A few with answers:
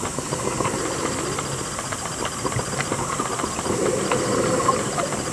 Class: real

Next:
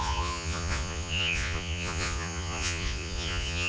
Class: fake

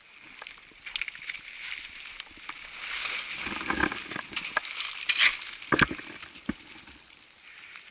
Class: real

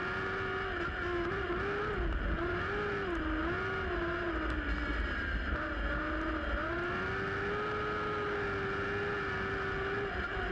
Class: real